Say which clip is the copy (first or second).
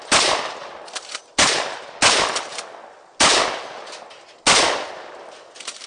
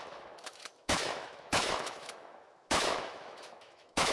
second